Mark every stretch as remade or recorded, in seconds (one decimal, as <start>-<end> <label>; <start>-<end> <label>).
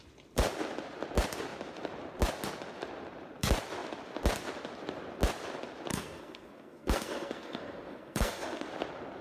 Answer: 0.0-5.9 recorded; 5.9-8.7 remade; 8.7-9.2 recorded